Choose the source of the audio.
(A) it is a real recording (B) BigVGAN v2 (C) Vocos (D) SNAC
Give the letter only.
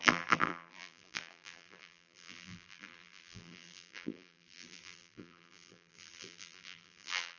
B